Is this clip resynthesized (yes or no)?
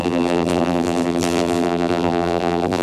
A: yes